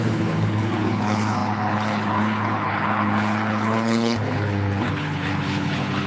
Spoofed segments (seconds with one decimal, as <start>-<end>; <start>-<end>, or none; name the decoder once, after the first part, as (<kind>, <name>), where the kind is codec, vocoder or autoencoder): 0.0-6.1 (codec, HILCodec)